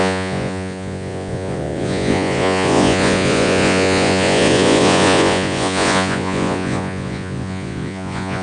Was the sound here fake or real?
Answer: fake